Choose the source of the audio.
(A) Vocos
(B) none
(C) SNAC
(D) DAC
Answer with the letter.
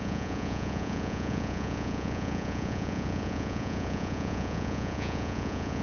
A